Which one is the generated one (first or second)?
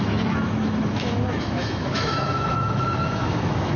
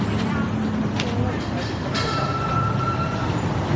first